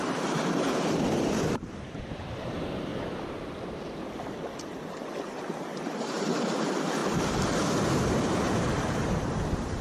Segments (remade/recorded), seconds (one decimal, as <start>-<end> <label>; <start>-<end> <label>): 0.0-2.9 remade; 2.9-5.6 recorded; 5.6-7.0 remade; 7.0-8.2 recorded; 8.2-9.8 remade